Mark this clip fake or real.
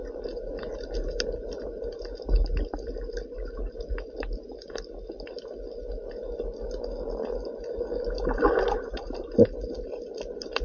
real